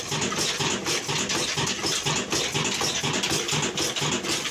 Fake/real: real